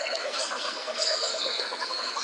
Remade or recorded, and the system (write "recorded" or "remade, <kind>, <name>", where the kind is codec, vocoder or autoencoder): remade, codec, SNAC